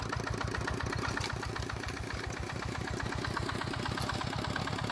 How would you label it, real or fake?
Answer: fake